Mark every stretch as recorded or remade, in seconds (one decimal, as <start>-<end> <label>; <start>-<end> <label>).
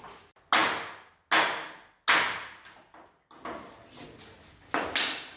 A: 0.0-5.4 recorded